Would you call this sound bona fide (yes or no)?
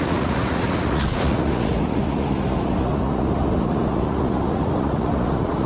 no